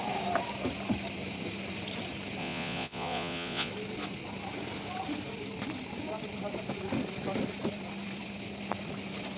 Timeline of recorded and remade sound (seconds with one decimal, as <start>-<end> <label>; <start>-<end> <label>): 0.0-2.4 recorded; 2.4-3.7 remade; 3.7-9.4 recorded